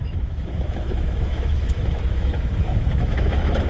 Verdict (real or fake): fake